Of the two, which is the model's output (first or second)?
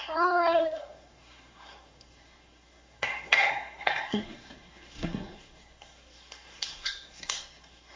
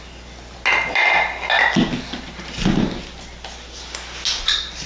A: first